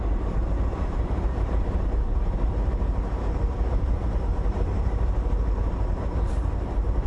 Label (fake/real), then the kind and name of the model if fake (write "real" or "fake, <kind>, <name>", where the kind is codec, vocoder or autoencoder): fake, vocoder, BigVGAN v2